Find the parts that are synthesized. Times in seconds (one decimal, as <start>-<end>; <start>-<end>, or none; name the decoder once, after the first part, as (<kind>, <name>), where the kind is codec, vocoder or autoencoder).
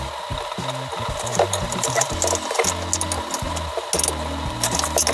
1.3-2.1 (vocoder, BigVGAN v2)